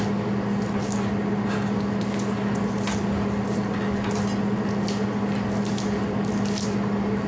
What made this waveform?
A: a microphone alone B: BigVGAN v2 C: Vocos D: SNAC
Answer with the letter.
A